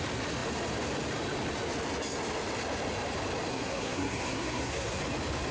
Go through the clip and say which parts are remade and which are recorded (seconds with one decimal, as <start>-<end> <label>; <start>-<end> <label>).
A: 0.0-3.5 recorded; 3.5-5.0 remade; 5.0-5.5 recorded